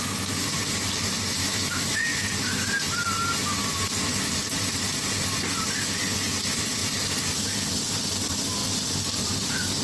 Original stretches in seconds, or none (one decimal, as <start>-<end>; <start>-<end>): 0.0-1.4; 2.3-9.8